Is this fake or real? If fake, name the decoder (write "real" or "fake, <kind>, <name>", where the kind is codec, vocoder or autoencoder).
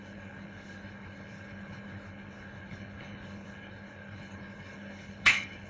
fake, codec, HILCodec